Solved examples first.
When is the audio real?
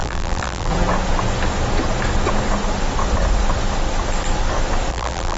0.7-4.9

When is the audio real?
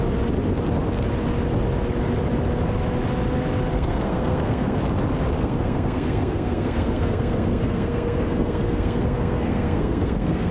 0.0-3.7; 4.8-5.4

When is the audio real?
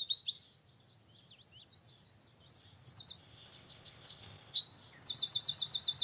0.0-3.2; 4.6-6.0